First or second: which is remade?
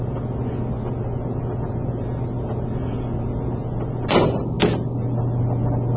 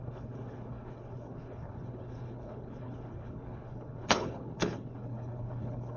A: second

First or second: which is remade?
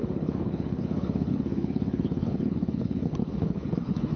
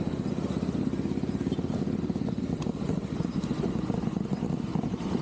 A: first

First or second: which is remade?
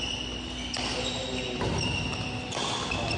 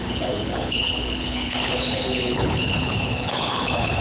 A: second